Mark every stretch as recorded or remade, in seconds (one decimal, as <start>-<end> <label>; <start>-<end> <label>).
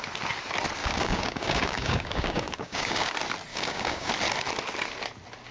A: 0.0-0.8 recorded; 0.8-3.1 remade; 3.1-3.5 recorded; 3.5-4.1 remade; 4.1-5.5 recorded